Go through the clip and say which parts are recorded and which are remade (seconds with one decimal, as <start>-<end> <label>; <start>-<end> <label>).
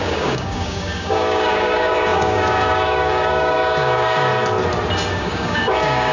0.0-4.3 remade; 4.3-5.1 recorded; 5.1-6.1 remade